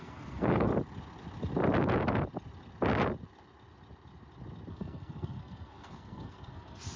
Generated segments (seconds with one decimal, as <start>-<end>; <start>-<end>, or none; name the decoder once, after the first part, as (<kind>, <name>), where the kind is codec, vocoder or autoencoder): 0.0-0.7 (codec, SNAC); 4.7-7.0